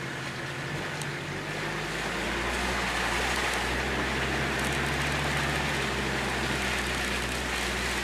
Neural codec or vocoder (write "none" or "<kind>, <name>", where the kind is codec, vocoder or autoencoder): none